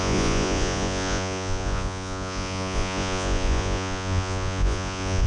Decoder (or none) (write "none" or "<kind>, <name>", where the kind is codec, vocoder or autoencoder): vocoder, Vocos